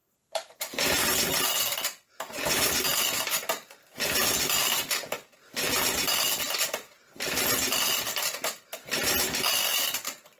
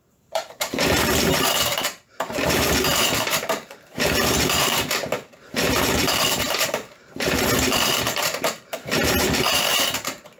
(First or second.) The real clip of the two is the first